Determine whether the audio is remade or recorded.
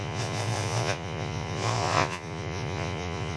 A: remade